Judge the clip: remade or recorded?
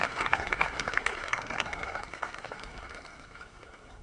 remade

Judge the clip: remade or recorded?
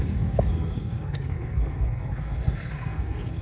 remade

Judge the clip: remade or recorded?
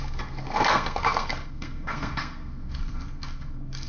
remade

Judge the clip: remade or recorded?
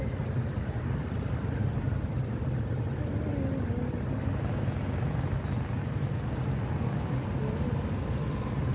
recorded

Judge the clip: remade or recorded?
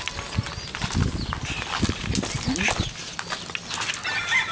recorded